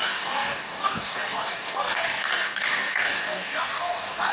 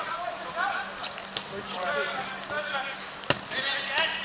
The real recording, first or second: second